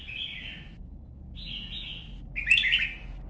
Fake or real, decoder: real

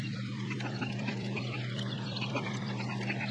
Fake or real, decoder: fake, vocoder, BigVGAN v2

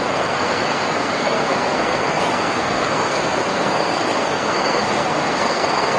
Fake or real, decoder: fake, codec, SNAC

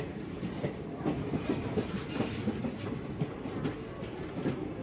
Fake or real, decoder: real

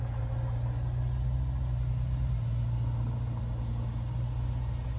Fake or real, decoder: real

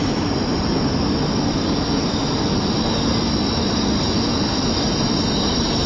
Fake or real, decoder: real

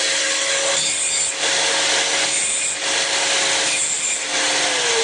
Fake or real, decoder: real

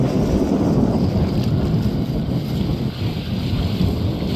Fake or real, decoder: real